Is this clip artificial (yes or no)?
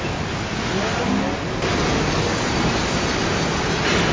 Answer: no